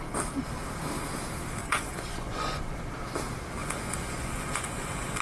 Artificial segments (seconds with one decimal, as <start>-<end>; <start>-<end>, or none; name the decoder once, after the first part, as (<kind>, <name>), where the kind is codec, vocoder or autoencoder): 1.6-2.6 (vocoder, Vocos); 3.6-5.2